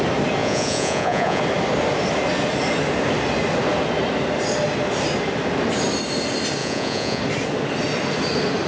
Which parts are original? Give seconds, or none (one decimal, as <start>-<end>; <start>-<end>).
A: 0.0-0.4; 1.4-6.6; 7.2-8.7

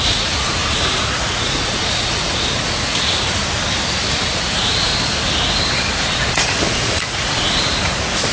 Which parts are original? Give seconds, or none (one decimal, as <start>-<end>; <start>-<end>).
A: 3.4-4.5; 4.9-6.1

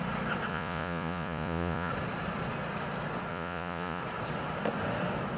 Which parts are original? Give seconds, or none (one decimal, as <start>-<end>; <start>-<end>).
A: 0.0-0.5; 1.9-3.3; 4.0-5.4

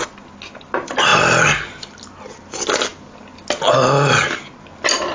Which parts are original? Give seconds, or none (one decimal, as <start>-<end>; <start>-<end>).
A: 0.0-5.1

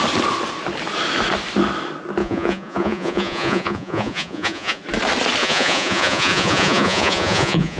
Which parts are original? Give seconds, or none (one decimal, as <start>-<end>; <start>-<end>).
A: 0.0-2.2; 4.8-5.4

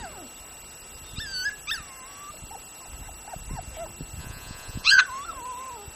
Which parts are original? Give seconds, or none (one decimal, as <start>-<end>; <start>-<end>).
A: 0.0-4.2; 5.0-6.0

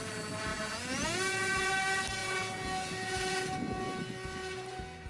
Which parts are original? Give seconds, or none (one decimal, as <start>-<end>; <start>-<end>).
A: 0.0-0.5; 1.7-2.2; 4.0-4.4

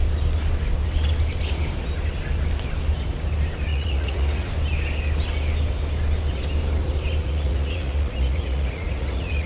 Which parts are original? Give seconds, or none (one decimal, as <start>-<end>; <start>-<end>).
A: 0.0-3.7; 4.5-7.2